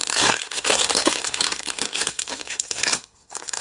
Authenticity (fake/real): fake